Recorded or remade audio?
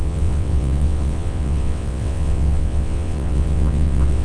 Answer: remade